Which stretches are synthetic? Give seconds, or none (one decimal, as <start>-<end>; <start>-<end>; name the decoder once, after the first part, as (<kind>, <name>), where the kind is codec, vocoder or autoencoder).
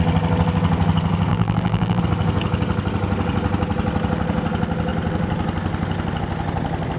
1.3-2.0 (vocoder, BigVGAN v2)